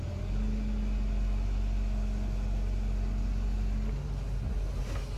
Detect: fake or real real